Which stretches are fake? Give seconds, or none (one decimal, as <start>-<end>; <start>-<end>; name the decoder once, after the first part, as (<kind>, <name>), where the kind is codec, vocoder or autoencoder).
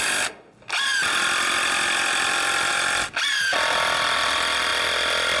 none